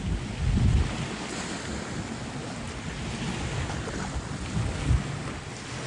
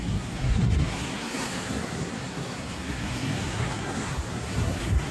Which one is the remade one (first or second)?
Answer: second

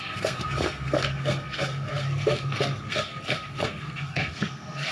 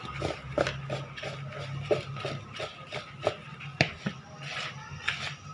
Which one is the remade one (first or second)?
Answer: first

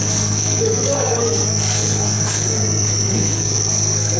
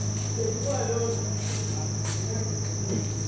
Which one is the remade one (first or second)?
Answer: first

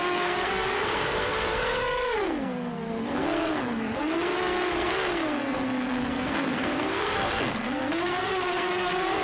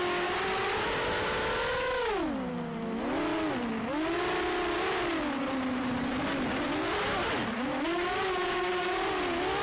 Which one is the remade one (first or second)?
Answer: first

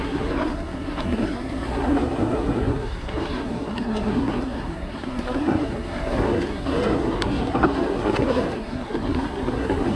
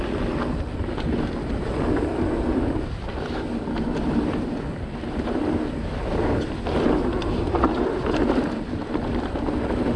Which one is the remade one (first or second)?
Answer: first